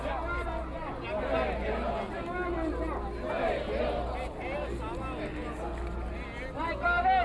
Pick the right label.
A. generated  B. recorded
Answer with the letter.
B